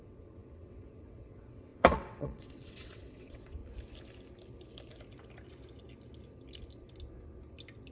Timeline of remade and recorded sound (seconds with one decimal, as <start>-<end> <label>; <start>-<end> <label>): 0.0-3.6 remade; 3.6-7.9 recorded